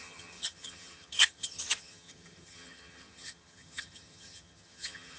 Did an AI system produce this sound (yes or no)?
yes